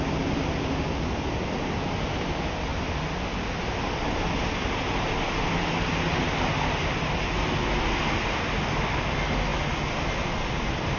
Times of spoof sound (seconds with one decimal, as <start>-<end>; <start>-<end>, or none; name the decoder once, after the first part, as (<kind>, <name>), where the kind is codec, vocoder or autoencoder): none